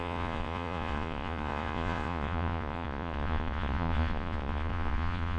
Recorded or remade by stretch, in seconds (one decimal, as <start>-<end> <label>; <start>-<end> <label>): 0.0-5.4 remade